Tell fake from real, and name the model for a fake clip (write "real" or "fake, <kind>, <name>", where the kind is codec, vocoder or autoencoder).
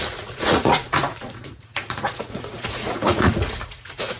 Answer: fake, vocoder, Vocos